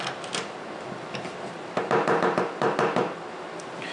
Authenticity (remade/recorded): recorded